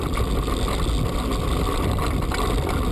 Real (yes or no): yes